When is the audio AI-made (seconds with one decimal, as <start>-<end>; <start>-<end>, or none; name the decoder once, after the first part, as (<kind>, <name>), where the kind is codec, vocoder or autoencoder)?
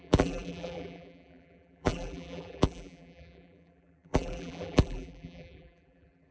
0.0-6.3 (vocoder, BigVGAN v2)